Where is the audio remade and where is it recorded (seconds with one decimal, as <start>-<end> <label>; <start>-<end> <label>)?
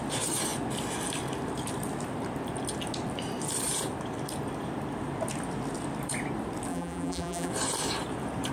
0.0-6.7 recorded; 6.7-7.5 remade; 7.5-8.5 recorded